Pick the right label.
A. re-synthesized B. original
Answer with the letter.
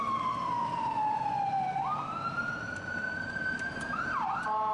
A